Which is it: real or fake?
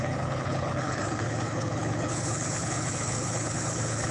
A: fake